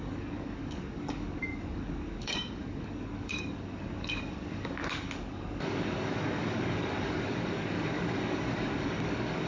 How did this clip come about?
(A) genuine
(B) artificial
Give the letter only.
B